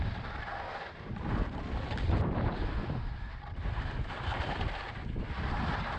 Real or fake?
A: real